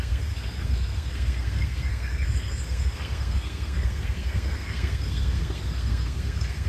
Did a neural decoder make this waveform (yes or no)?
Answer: yes